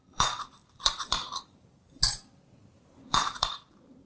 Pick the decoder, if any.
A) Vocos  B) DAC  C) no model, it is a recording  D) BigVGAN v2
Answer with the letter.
D